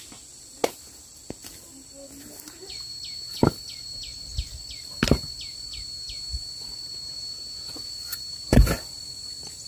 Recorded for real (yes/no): yes